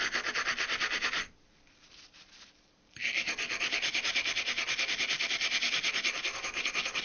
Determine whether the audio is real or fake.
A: real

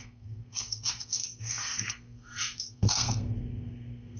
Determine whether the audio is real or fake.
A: fake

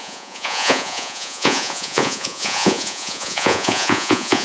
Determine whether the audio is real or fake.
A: fake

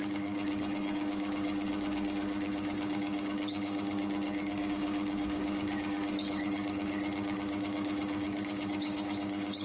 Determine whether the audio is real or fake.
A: fake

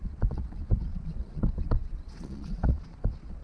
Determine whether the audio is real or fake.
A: fake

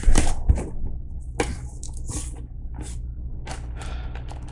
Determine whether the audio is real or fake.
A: real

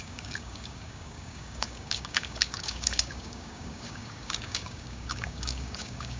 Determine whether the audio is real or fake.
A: fake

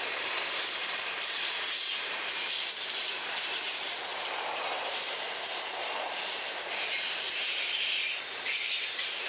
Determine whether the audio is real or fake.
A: fake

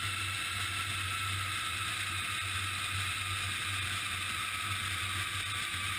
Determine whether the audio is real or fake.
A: real